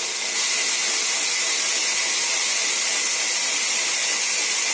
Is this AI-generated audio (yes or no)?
no